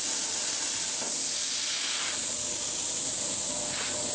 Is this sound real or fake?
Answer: real